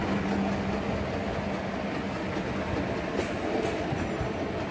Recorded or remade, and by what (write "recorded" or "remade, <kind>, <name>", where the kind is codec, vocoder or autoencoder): recorded